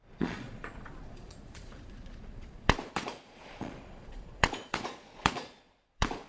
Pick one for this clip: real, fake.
fake